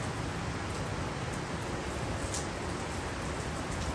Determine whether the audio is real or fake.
real